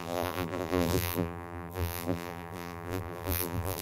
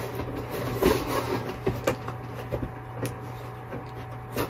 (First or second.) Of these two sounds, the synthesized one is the first